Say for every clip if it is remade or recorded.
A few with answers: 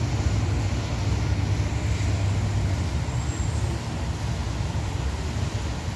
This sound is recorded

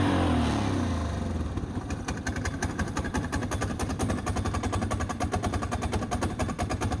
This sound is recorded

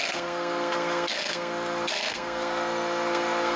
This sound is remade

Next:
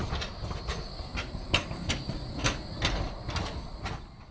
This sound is recorded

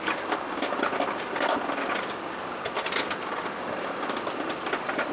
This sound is recorded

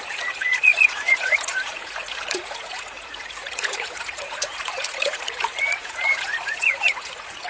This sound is remade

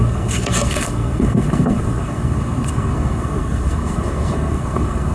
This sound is remade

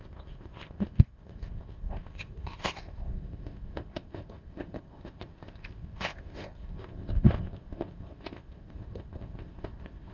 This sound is remade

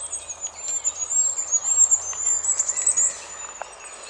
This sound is recorded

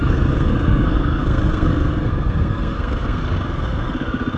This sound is remade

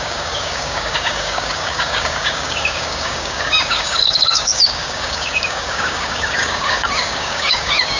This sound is remade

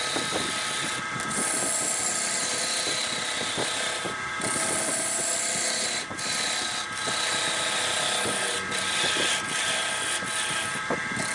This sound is recorded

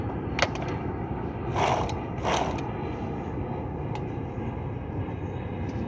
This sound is recorded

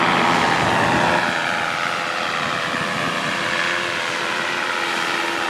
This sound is remade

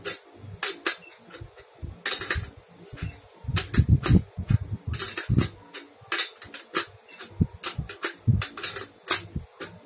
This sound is recorded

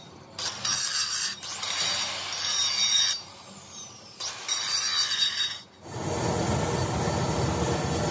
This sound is recorded